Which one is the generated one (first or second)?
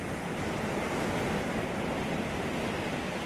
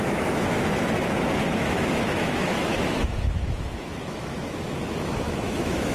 second